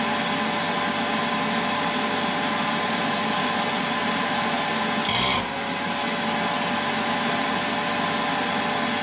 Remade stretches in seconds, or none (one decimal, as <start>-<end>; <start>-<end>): 2.7-4.7